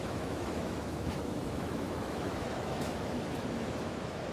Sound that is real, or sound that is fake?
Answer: fake